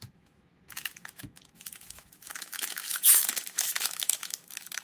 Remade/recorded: remade